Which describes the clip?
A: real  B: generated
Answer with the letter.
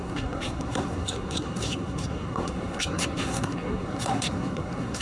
B